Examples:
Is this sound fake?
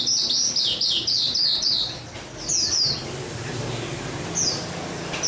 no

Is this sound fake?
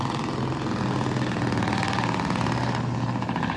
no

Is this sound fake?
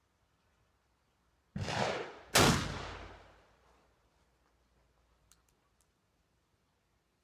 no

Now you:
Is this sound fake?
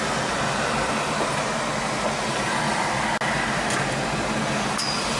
no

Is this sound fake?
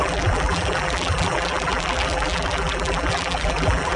yes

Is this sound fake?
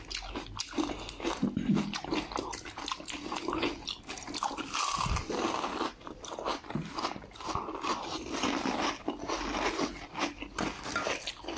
no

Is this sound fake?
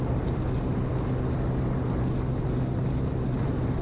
no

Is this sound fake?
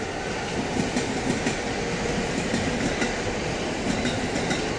no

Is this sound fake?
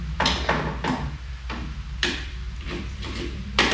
yes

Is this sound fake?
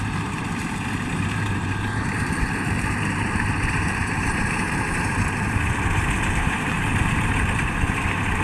yes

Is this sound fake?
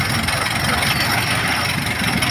no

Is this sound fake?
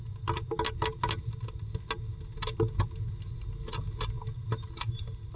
no